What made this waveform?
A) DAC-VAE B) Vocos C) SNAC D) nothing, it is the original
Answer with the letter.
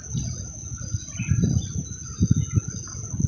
D